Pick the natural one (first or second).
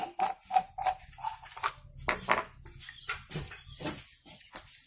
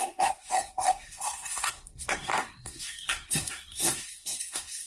first